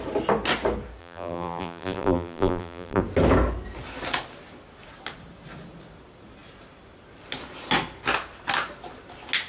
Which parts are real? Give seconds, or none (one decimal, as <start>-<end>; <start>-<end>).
0.0-1.0; 3.0-9.5